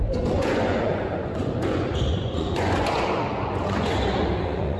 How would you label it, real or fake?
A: fake